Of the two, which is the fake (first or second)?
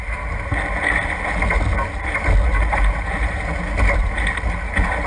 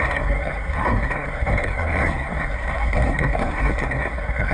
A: second